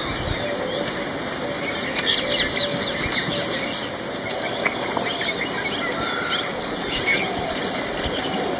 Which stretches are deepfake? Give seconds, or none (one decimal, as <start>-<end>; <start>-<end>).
7.1-8.6